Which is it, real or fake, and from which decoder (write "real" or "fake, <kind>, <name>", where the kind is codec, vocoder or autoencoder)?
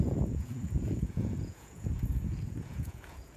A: fake, vocoder, Vocos